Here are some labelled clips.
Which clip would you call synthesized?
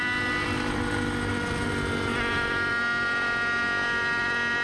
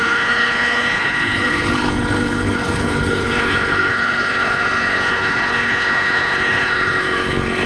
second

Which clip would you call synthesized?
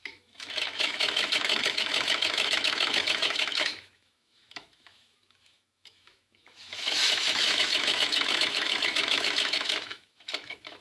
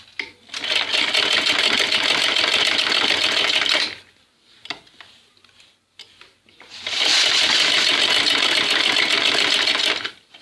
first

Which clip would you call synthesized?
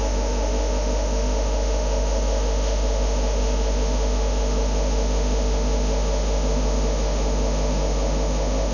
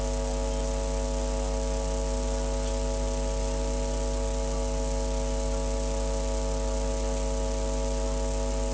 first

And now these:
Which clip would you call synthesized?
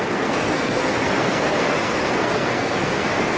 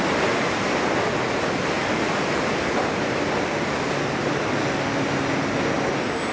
first